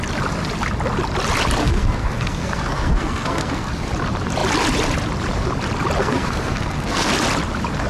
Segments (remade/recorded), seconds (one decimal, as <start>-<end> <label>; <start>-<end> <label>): 0.0-1.6 recorded; 1.6-3.7 remade; 3.7-6.0 recorded; 6.0-7.1 remade; 7.1-7.9 recorded